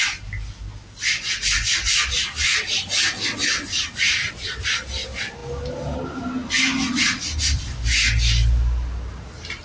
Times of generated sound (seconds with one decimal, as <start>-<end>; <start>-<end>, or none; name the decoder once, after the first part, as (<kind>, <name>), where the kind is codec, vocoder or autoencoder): none